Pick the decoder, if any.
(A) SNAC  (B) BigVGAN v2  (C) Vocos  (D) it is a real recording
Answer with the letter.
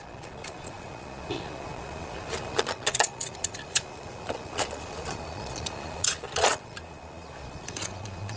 C